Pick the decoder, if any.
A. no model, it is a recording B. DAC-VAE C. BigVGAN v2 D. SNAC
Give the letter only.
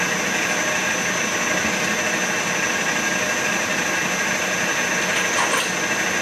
A